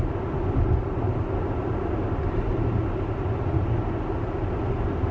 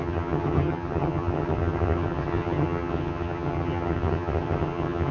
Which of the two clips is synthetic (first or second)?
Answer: second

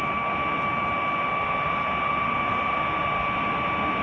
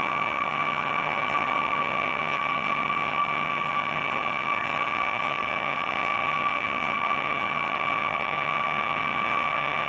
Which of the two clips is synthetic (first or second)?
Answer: second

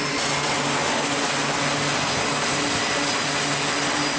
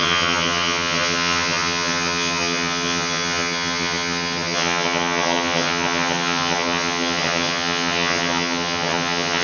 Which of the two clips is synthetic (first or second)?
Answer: second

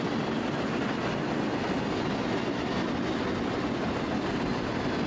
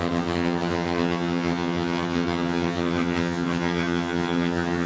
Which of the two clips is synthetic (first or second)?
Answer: second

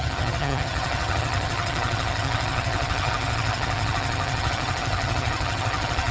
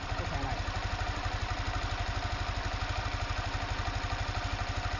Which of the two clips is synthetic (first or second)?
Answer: first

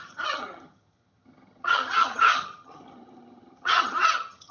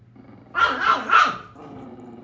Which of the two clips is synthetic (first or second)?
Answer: first